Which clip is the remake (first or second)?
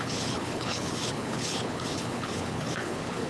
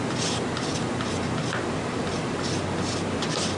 first